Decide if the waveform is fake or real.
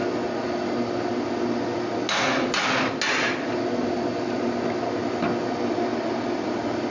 real